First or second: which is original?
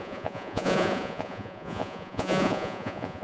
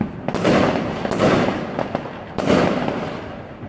second